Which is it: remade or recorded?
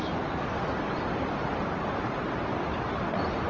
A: recorded